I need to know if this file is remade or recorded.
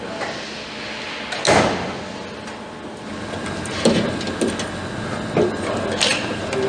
recorded